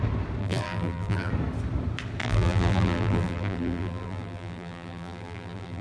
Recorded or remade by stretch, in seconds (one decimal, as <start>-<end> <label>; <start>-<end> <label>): 0.0-0.4 recorded; 0.4-1.3 remade; 1.3-2.2 recorded; 2.2-5.8 remade